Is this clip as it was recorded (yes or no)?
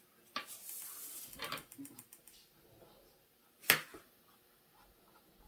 yes